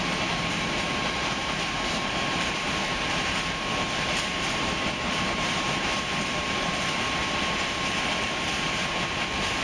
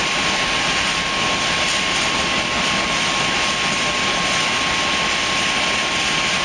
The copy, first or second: first